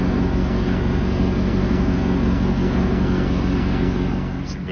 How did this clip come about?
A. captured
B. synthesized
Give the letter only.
B